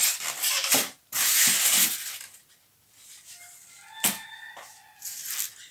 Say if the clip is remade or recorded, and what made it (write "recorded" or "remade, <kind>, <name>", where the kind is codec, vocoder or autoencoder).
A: recorded